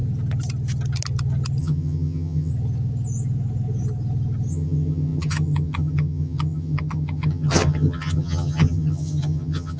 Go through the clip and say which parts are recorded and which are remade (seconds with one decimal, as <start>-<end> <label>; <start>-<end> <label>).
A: 0.0-1.6 recorded; 1.6-2.5 remade; 2.5-4.5 recorded; 4.5-9.8 remade